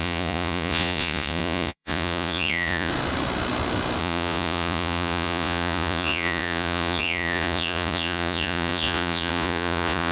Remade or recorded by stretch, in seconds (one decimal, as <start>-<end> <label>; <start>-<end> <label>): 0.0-2.9 remade; 2.9-4.0 recorded; 4.0-10.1 remade